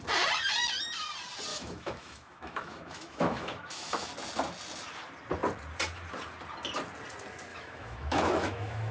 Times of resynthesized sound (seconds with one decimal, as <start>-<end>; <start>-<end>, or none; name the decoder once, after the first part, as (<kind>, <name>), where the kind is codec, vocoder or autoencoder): 1.5-4.1 (autoencoder, DAC-VAE); 7.5-8.9